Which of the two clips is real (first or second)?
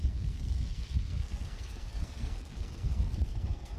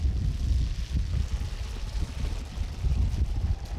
second